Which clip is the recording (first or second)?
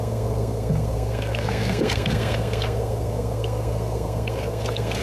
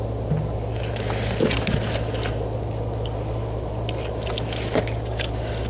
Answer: second